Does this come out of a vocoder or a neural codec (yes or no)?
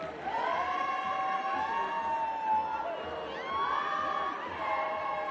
no